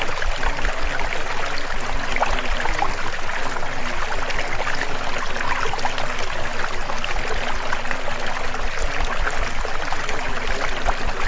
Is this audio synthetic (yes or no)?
no